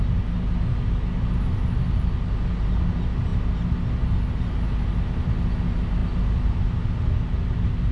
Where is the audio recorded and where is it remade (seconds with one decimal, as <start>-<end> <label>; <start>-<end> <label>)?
0.0-7.9 recorded